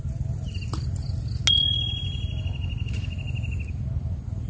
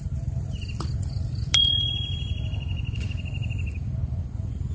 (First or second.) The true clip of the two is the first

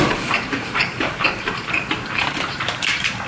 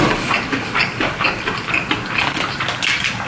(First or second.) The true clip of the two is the second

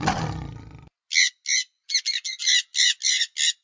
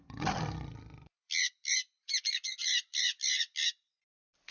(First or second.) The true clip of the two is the first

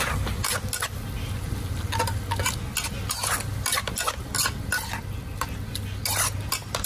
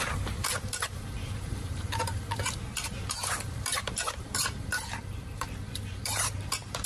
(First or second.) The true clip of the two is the first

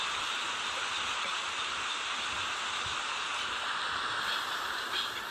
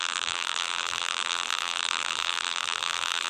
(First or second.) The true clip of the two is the first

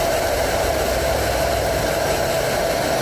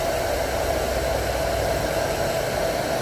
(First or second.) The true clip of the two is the second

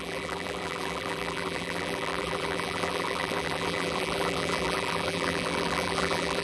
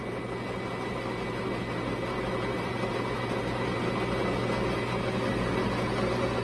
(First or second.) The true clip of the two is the second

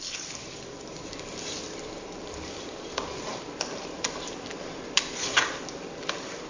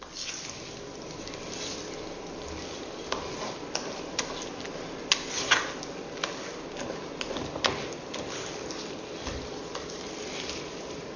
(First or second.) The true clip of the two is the second